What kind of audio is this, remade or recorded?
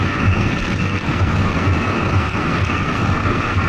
remade